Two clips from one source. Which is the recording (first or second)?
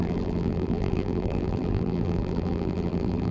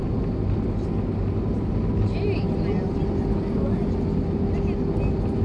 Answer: second